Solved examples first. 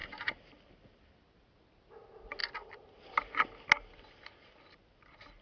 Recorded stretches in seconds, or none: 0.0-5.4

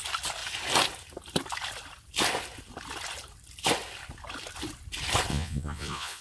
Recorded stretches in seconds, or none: 0.0-5.3

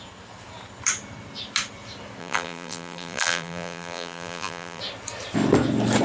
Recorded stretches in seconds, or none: 0.0-2.2; 4.8-6.0

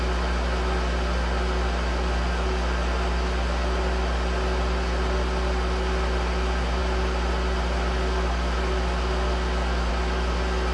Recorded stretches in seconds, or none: 0.0-10.7

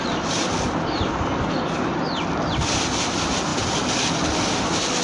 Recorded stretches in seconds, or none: 0.0-5.0

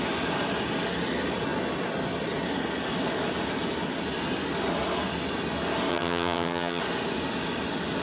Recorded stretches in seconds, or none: 0.0-5.9; 6.8-8.0

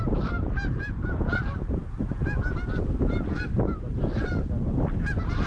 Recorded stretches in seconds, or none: 0.0-5.5

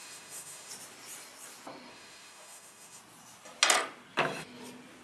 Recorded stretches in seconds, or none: 0.7-1.9; 3.0-5.0